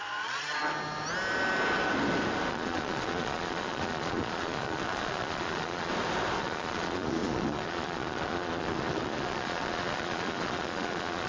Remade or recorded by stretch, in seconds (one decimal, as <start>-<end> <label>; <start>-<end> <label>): 0.0-0.6 remade; 0.6-2.5 recorded; 2.5-5.9 remade; 5.9-6.4 recorded; 6.4-11.3 remade